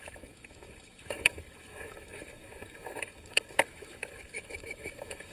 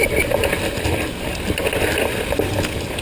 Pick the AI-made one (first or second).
first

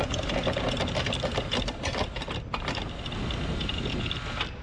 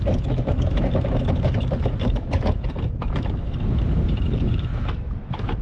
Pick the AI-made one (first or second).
second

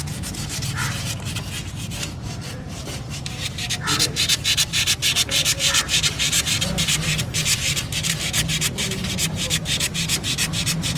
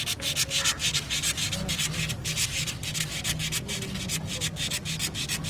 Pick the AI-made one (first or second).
first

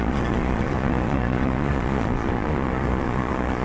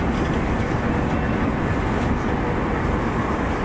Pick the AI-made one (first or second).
first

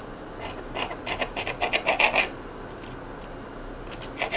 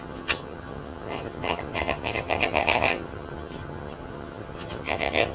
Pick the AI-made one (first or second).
second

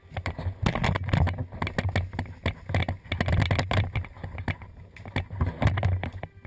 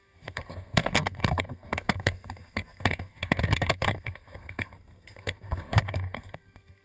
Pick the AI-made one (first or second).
second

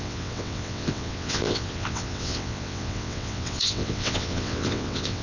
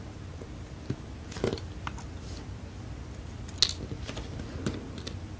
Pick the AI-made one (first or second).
first